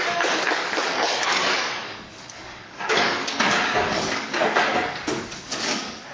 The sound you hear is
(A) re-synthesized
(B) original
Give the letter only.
A